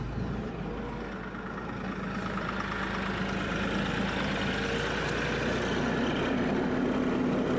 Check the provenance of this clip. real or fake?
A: real